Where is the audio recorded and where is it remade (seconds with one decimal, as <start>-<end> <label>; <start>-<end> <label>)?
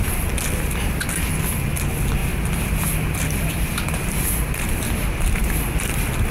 0.0-2.2 recorded; 2.2-5.5 remade; 5.5-6.3 recorded